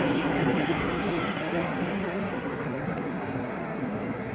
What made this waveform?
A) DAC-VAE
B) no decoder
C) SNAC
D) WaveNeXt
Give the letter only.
C